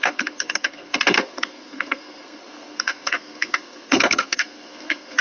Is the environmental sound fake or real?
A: fake